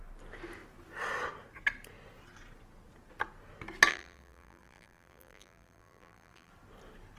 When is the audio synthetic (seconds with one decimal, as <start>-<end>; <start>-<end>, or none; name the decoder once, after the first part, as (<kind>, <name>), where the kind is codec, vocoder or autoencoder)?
3.9-6.5 (vocoder, BigVGAN v2)